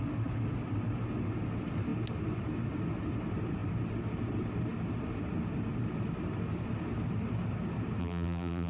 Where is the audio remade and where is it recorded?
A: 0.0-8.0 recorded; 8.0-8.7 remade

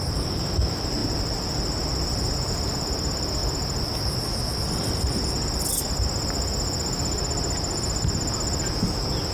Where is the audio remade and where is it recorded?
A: 0.0-9.3 recorded